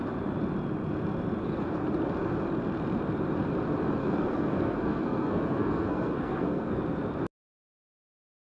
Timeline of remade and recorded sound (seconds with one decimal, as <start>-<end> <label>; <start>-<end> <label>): 0.0-4.0 recorded; 4.0-6.8 remade; 6.8-8.5 recorded